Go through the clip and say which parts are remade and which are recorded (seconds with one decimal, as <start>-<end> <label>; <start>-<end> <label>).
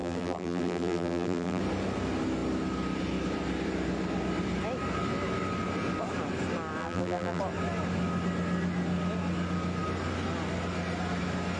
0.0-1.6 remade; 1.6-6.8 recorded; 6.8-7.4 remade; 7.4-11.6 recorded